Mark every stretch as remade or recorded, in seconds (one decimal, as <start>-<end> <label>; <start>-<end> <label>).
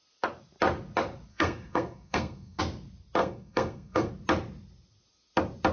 0.0-1.3 recorded; 1.3-2.6 remade; 2.6-3.2 recorded; 3.2-4.1 remade; 4.1-5.7 recorded